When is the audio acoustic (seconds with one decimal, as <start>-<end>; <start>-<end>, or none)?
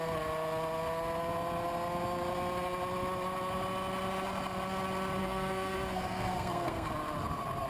0.0-5.2; 6.9-7.7